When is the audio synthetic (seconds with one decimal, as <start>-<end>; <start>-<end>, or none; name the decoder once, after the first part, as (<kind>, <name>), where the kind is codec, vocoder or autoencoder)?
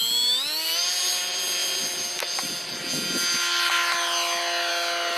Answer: none